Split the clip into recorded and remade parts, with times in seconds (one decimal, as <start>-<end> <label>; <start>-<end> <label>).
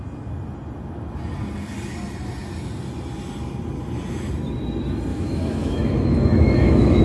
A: 0.0-5.1 recorded; 5.1-7.0 remade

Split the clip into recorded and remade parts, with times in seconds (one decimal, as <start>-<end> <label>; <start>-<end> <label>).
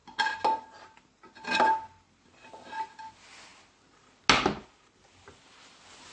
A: 0.0-6.1 recorded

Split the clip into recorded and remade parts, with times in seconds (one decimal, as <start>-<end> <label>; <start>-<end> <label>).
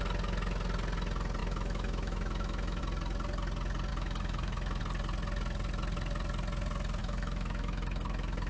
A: 0.0-1.4 recorded; 1.4-2.8 remade; 2.8-3.9 recorded; 3.9-4.8 remade; 4.8-7.0 recorded; 7.0-8.5 remade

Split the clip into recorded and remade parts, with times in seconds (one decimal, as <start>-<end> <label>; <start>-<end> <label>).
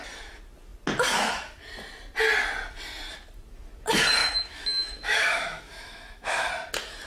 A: 0.0-4.2 recorded; 4.2-6.5 remade; 6.5-7.1 recorded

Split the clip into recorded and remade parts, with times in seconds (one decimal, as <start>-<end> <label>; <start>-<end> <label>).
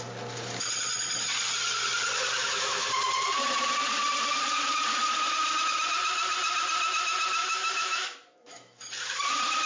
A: 0.0-2.4 recorded; 2.4-2.9 remade; 2.9-7.4 recorded; 7.4-8.9 remade; 8.9-9.7 recorded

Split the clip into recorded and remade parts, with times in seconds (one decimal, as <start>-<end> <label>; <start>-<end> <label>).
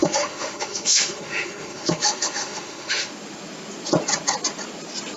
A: 0.0-3.1 remade; 3.1-5.2 recorded